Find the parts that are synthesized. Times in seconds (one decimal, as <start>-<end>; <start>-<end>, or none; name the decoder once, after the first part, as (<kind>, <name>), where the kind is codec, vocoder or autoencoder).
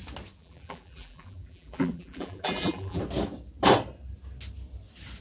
0.4-3.0 (vocoder, BigVGAN v2)